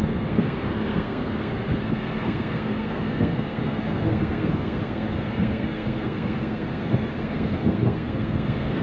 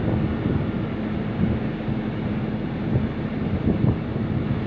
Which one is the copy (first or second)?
first